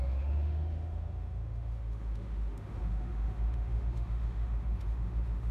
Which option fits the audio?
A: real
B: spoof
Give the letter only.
B